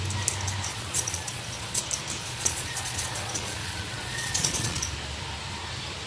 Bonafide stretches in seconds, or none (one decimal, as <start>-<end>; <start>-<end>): 0.0-0.7; 1.8-2.2; 4.8-6.1